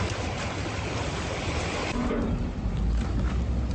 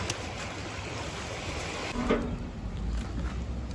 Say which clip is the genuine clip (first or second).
second